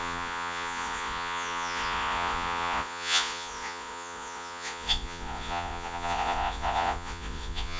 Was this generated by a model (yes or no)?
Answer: yes